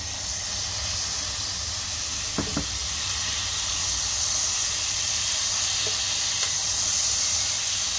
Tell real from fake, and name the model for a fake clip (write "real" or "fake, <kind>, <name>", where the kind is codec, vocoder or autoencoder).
real